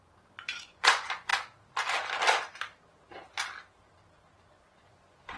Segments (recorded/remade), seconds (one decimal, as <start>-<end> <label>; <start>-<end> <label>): 0.0-1.3 remade; 1.3-4.5 recorded; 4.5-5.4 remade